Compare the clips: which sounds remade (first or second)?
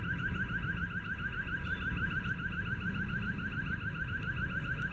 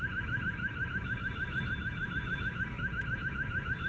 second